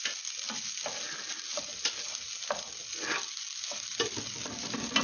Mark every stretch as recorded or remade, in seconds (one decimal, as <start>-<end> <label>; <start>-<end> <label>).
0.0-5.0 recorded